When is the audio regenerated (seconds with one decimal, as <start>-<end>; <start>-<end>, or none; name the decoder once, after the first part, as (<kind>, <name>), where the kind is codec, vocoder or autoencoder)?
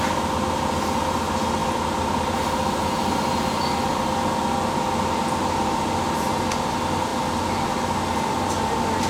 none